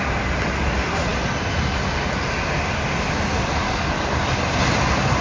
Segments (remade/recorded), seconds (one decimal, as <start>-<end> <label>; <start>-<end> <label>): 0.0-5.2 recorded